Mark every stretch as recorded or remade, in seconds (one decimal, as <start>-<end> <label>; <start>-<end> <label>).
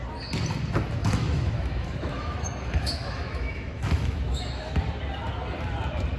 0.0-1.0 recorded; 1.0-4.7 remade; 4.7-6.2 recorded